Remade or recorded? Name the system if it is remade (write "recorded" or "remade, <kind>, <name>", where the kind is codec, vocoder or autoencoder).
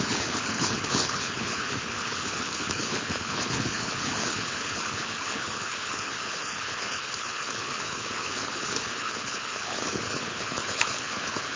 remade, codec, HILCodec